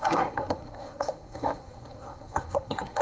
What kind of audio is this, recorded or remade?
remade